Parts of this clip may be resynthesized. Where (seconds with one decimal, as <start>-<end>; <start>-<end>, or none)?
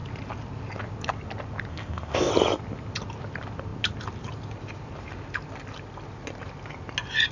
1.7-2.3